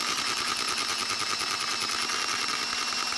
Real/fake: real